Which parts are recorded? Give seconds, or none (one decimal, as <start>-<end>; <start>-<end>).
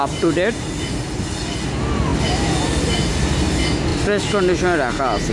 0.0-5.3